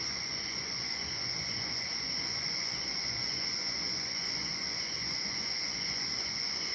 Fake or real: fake